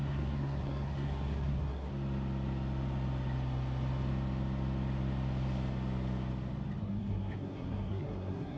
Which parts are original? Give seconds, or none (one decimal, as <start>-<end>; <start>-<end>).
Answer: 1.9-6.8

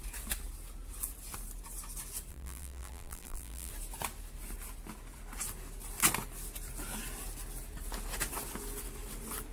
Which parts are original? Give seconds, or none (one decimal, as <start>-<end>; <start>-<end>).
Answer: 0.0-2.3; 3.7-9.5

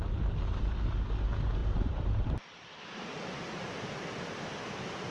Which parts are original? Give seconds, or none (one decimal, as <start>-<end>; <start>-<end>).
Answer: 0.0-1.6; 2.8-5.1

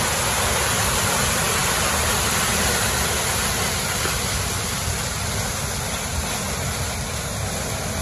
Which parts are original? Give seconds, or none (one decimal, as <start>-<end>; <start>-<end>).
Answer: 0.0-8.0